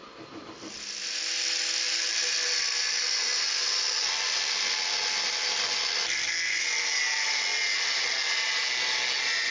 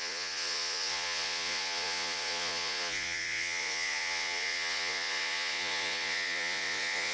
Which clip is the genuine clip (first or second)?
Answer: first